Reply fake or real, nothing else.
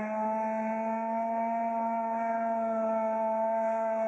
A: real